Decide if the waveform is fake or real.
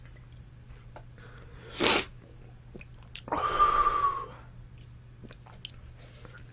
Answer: real